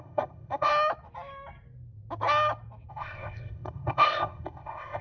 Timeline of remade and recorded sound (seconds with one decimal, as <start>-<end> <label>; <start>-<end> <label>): 0.0-0.7 remade; 0.7-2.9 recorded; 2.9-5.0 remade